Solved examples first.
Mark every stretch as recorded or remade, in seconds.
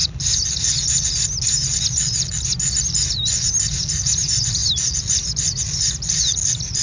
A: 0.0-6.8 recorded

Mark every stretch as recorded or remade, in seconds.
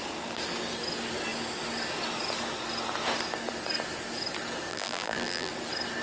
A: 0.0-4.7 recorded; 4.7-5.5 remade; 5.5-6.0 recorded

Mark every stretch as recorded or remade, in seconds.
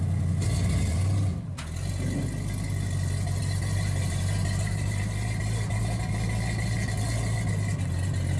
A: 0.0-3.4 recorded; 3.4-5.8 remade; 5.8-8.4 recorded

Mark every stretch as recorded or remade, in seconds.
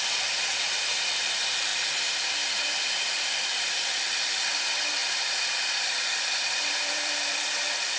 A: 0.0-8.0 remade